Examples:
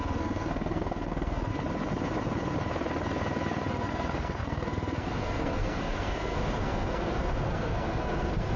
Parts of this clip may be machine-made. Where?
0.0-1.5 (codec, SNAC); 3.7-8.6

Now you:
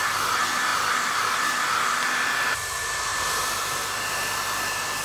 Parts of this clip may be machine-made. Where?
none

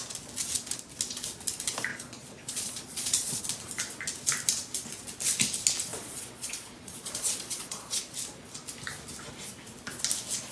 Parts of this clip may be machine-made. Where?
1.9-3.4 (vocoder, Vocos); 5.9-8.0

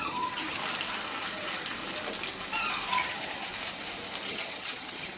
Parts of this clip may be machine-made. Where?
0.0-0.6 (vocoder, HiFi-GAN); 2.9-3.5; 4.3-5.2

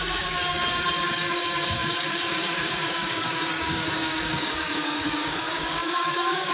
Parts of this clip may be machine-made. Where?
0.0-6.5 (codec, DAC)

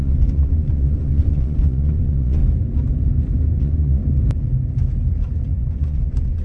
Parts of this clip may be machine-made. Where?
0.0-2.4 (vocoder, Vocos); 3.6-4.0; 5.5-6.4

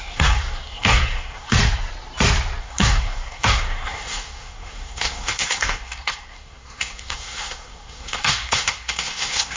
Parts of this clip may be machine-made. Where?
0.0-1.6 (codec, SNAC); 2.6-9.6